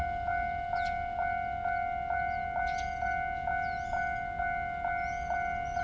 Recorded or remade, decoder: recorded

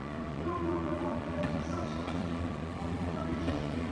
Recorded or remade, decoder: remade, vocoder, Vocos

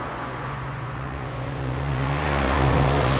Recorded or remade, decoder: remade, vocoder, Vocos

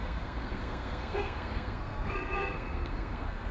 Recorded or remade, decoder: remade, codec, SNAC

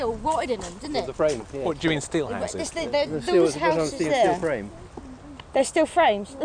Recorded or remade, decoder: recorded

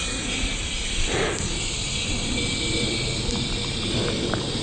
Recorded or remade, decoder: recorded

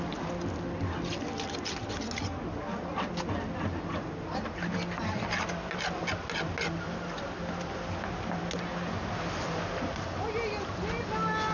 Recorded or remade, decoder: recorded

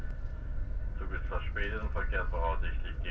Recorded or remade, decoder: recorded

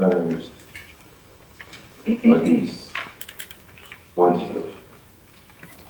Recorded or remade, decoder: remade, autoencoder, DAC-VAE